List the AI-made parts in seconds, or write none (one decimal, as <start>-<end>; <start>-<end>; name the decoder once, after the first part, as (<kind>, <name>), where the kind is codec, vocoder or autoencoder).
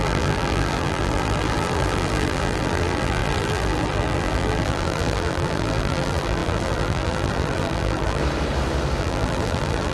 0.0-8.2 (vocoder, BigVGAN v2); 9.0-9.9